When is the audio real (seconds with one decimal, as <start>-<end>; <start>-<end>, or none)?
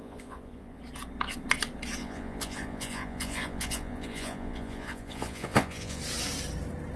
0.8-2.0; 6.0-7.0